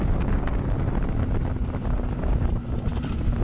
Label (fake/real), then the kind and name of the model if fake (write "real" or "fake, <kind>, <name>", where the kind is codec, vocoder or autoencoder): real